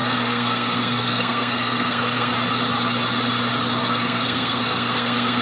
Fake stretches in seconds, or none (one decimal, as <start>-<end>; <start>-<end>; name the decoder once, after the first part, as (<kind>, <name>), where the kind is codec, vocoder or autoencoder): 0.0-2.3 (codec, SNAC); 3.8-5.4